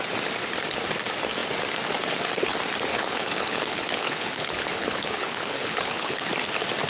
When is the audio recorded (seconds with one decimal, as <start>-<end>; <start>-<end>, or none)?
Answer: 0.0-2.9; 6.2-6.9